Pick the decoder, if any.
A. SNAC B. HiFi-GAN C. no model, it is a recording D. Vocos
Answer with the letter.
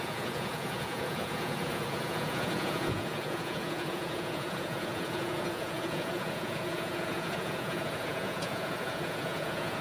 D